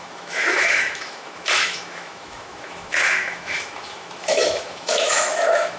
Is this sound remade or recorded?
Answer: remade